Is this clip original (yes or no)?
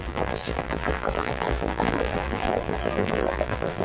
no